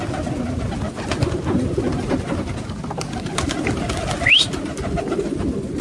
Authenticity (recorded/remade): recorded